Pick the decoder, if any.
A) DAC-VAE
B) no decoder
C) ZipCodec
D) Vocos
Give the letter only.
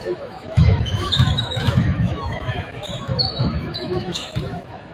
A